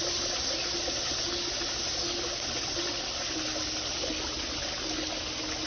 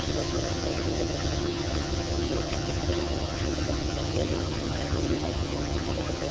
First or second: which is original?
first